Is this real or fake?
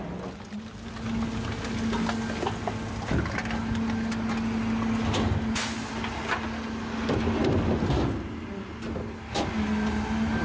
real